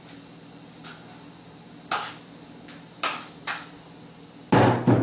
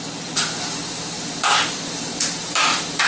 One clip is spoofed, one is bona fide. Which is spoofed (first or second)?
second